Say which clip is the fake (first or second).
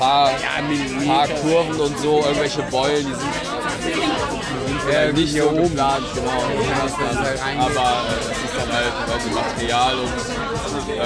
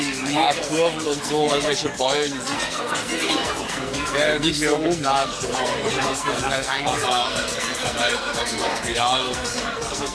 second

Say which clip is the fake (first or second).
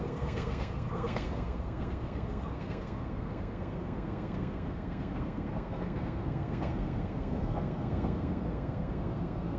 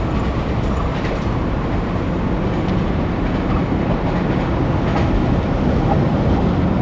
first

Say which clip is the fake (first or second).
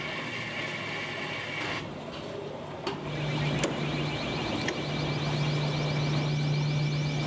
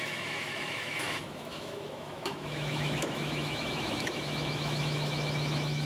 second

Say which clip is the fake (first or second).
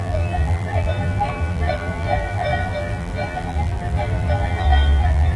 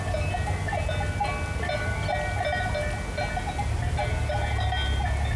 first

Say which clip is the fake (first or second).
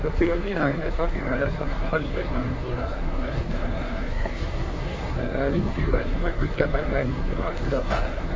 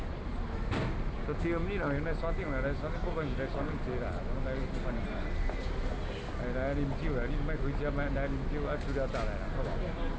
first